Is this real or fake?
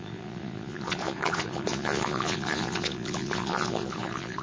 fake